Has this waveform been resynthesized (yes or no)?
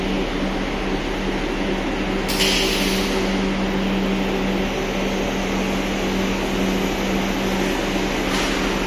no